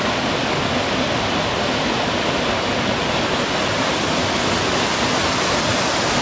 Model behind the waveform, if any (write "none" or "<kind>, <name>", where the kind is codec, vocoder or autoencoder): none